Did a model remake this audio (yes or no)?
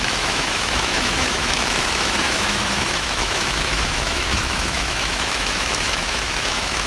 yes